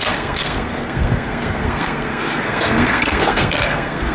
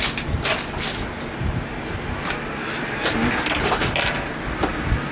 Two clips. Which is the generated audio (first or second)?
first